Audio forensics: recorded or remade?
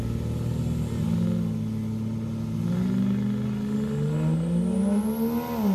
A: recorded